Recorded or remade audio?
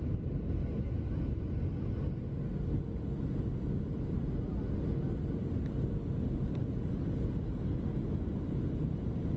recorded